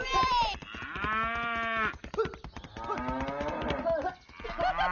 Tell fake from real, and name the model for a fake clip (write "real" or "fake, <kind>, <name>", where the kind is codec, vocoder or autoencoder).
real